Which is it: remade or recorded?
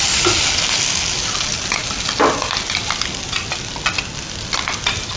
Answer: recorded